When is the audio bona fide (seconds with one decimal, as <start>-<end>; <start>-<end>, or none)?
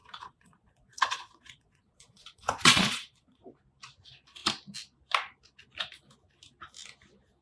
3.4-7.4